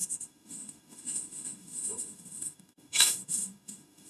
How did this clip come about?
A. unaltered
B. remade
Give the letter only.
B